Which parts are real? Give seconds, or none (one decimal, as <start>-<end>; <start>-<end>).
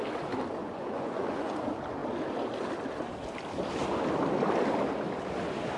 0.0-0.6; 1.5-5.8